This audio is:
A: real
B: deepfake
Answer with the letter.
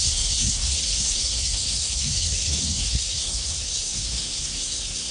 B